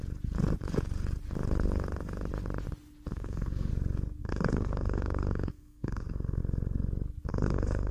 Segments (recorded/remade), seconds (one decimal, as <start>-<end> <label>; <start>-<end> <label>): 0.0-3.1 recorded; 3.1-3.7 remade; 3.7-4.2 recorded; 4.2-6.4 remade; 6.4-7.3 recorded; 7.3-7.9 remade